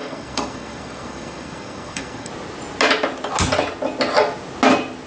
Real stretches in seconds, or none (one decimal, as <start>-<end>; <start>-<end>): 2.3-5.1